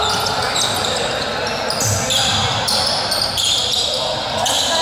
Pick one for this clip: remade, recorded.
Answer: recorded